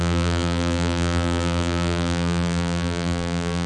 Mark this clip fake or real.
fake